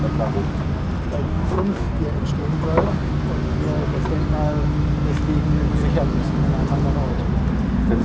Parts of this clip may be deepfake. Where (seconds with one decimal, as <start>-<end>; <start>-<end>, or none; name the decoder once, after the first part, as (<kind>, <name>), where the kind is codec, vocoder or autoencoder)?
1.3-2.0 (codec, DAC)